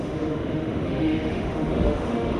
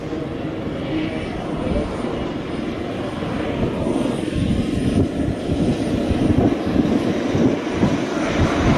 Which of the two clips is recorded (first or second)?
second